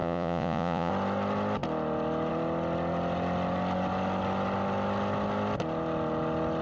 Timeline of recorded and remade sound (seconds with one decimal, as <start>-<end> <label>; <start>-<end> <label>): 0.0-0.9 remade; 0.9-6.6 recorded